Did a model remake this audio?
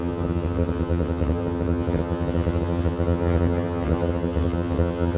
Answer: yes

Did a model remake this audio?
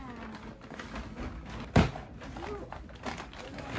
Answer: no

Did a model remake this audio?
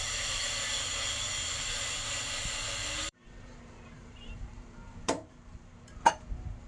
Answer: yes